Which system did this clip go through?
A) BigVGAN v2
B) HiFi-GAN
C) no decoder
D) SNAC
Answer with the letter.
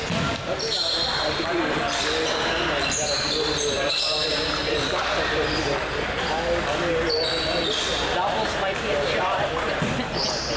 C